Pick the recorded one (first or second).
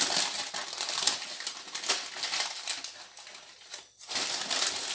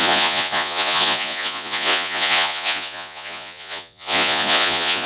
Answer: first